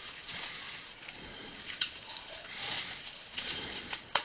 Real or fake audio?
fake